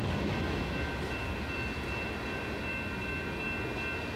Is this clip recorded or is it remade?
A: recorded